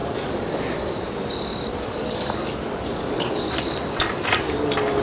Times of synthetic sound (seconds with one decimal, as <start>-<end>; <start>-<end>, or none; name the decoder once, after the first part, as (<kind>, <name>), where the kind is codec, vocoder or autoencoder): 0.0-0.9 (codec, DAC); 1.7-3.5